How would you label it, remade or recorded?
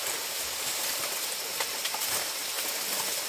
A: recorded